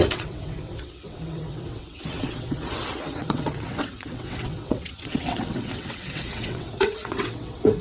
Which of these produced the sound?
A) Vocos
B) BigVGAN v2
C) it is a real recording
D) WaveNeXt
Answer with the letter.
D